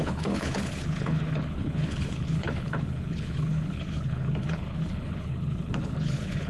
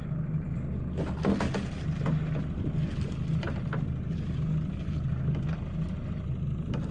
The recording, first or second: second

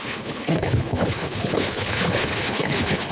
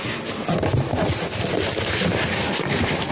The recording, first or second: second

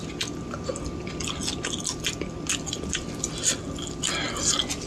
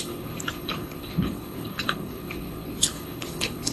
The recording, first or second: first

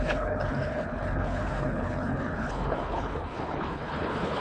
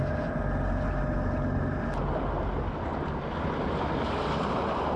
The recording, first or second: second